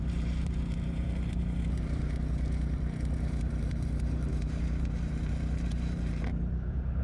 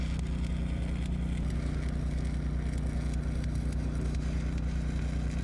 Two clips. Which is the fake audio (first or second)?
first